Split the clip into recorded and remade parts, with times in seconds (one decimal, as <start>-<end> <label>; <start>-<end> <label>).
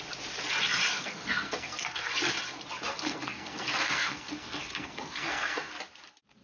0.0-0.9 recorded; 0.9-2.1 remade; 2.1-2.9 recorded; 2.9-5.7 remade; 5.7-6.4 recorded